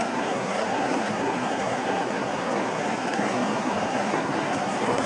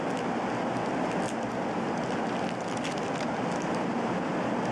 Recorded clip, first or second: second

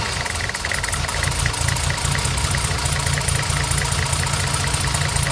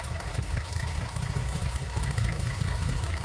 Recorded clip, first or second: first